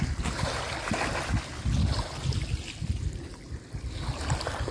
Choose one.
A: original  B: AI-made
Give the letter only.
A